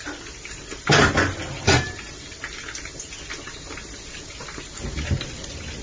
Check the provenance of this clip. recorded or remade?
recorded